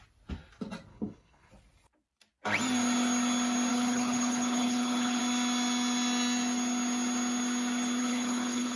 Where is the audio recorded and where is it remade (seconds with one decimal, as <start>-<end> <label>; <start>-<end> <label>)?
0.0-0.9 recorded; 0.9-1.5 remade; 1.5-3.7 recorded; 3.7-5.2 remade; 5.2-8.0 recorded; 8.0-8.8 remade